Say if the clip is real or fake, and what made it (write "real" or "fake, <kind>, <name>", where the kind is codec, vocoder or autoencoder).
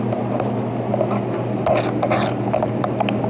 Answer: real